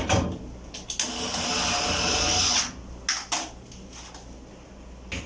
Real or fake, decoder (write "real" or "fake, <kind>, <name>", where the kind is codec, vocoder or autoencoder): real